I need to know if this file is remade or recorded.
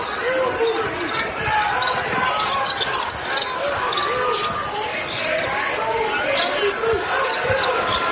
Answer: recorded